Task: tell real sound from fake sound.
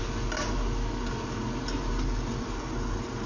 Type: real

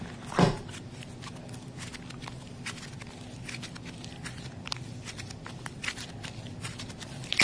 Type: real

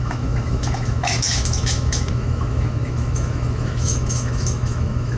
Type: fake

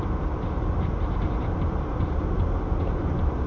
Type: real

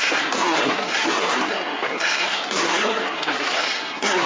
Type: fake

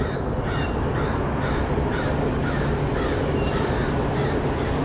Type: real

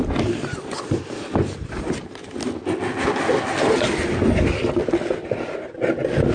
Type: real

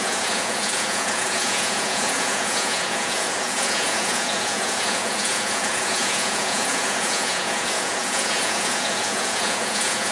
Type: fake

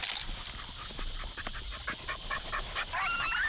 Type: real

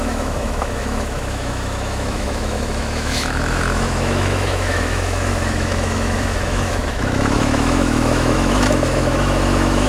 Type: fake